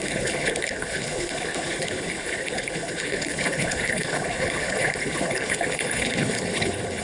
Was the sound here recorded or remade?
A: remade